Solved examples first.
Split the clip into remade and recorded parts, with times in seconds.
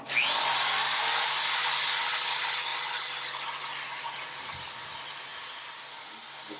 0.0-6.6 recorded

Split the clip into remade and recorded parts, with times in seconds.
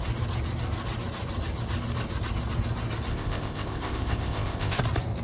0.0-3.1 recorded; 3.1-4.8 remade; 4.8-5.2 recorded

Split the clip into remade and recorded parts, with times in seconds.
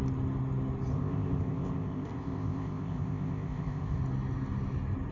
0.0-0.9 recorded; 0.9-4.0 remade; 4.0-5.1 recorded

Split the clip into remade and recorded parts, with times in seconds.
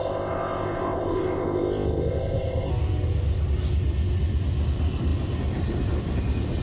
0.0-2.7 remade; 2.7-6.6 recorded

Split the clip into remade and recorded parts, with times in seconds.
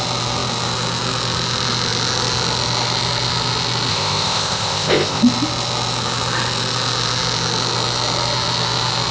0.0-3.9 recorded; 3.9-5.2 remade; 5.2-9.1 recorded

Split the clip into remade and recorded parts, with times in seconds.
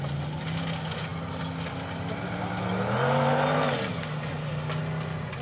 0.0-5.4 recorded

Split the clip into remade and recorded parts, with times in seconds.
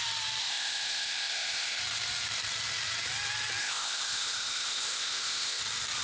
0.0-0.4 recorded; 0.4-1.8 remade; 1.8-3.6 recorded; 3.6-5.6 remade; 5.6-6.0 recorded